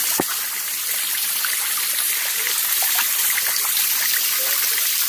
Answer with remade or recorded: recorded